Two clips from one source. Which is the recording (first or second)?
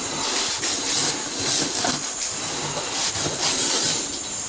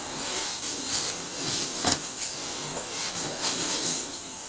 first